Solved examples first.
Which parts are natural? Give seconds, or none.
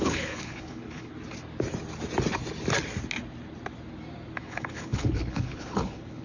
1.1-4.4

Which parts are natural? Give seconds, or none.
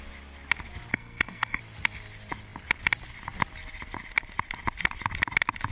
0.0-0.9; 1.6-5.7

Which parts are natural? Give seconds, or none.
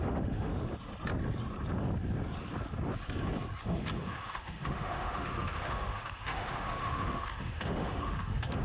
0.5-3.6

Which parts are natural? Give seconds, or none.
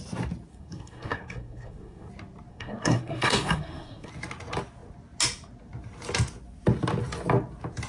0.0-0.5; 2.1-2.5; 4.1-7.9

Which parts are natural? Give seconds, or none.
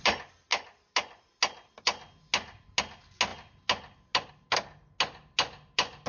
0.0-6.1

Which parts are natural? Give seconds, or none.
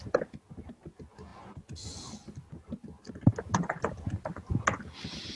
0.0-1.3; 3.1-5.4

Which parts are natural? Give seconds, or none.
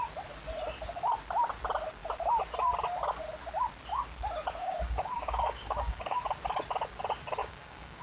0.0-4.6; 6.2-7.4